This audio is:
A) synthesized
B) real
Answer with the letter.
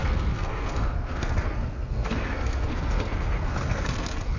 A